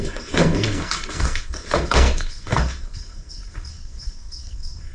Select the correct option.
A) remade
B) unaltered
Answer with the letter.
A